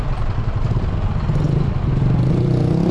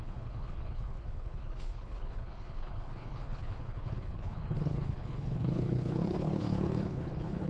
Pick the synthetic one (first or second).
second